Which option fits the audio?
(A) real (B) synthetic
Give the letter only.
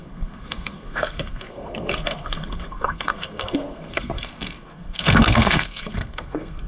B